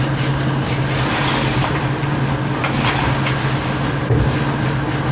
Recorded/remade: recorded